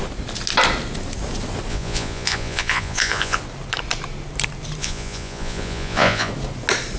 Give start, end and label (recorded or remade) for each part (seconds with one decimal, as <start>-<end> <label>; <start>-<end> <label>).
0.0-1.7 recorded; 1.7-3.4 remade; 3.4-4.8 recorded; 4.8-6.3 remade; 6.3-7.0 recorded